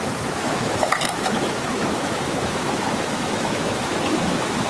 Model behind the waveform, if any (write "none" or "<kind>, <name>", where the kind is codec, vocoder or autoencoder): autoencoder, DAC-VAE